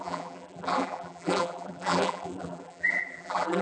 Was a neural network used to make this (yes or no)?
yes